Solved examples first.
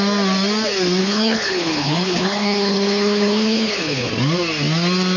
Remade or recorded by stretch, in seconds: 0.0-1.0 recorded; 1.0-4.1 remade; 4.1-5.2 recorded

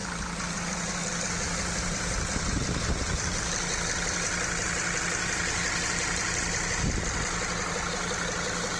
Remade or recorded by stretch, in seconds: 0.0-8.8 recorded

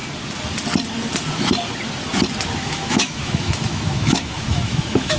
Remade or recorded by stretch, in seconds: 0.0-2.6 recorded; 2.6-5.2 remade